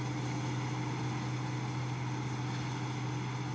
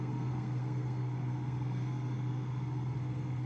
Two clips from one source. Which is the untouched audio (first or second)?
first